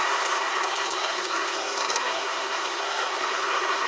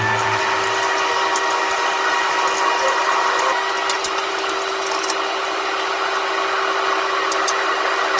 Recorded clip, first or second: second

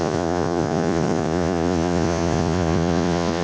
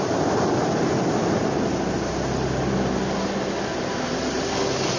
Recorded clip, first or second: second